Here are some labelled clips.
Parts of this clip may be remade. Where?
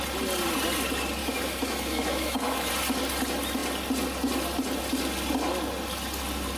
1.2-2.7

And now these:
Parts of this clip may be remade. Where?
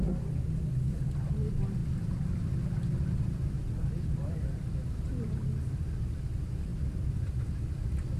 1.8-5.4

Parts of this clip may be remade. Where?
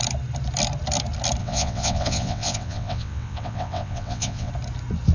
1.4-4.5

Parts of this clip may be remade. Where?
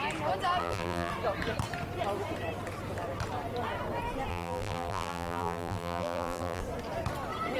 0.6-1.1; 4.3-6.6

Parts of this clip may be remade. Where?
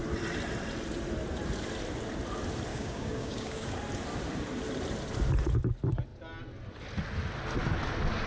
2.7-3.7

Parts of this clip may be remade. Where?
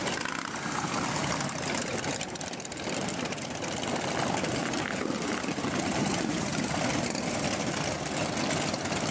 0.0-0.8; 1.9-4.5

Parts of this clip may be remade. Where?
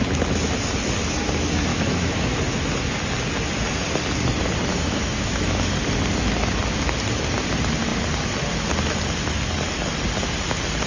1.7-2.4; 4.7-5.7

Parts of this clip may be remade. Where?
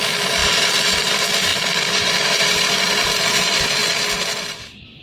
0.0-3.8; 4.4-5.0